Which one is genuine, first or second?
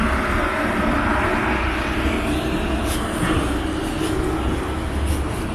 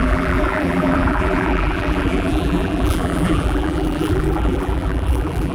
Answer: first